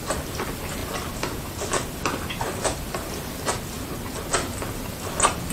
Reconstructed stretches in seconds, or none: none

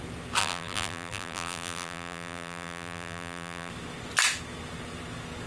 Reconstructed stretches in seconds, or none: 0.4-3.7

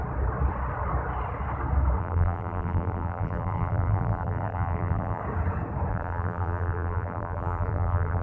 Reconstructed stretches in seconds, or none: 2.0-5.2; 5.9-8.2